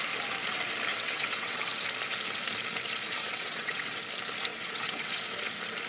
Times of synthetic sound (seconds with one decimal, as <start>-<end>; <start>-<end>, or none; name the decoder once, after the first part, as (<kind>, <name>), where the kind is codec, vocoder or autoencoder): 0.9-1.6 (vocoder, WaveNeXt); 3.2-4.0; 4.5-5.1